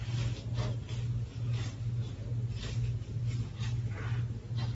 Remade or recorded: recorded